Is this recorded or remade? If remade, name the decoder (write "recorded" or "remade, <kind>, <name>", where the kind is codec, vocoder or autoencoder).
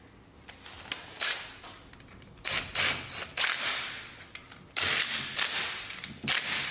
recorded